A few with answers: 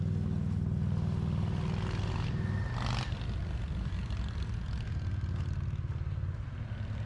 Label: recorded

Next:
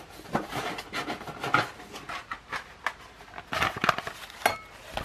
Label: recorded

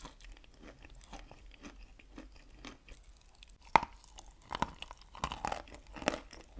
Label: recorded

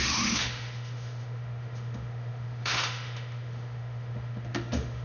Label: remade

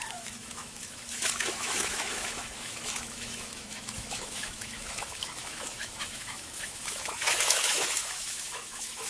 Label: remade